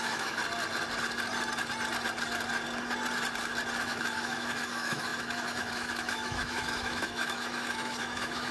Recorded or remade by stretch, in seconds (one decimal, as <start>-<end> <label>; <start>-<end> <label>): 0.0-0.4 remade; 0.4-3.8 recorded; 3.8-8.5 remade